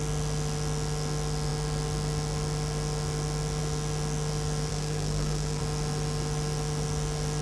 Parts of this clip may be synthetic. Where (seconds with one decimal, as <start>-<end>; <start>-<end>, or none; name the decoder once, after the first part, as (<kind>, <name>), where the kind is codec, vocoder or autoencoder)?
4.7-5.6 (codec, SNAC)